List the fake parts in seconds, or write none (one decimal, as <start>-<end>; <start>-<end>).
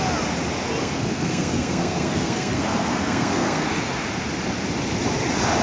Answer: 0.8-3.8